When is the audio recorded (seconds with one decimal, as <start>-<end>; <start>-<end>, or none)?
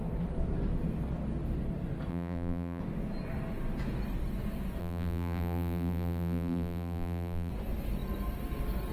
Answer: 0.0-2.1; 2.8-4.8; 7.5-8.9